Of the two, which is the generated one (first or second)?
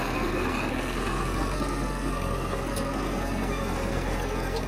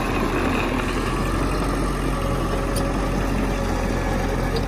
first